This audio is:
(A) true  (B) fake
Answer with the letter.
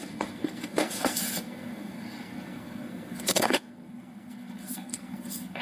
B